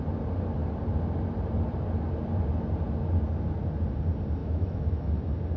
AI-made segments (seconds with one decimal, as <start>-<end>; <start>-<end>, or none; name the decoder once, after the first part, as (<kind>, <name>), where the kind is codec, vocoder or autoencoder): 4.4-5.1 (autoencoder, DAC-VAE)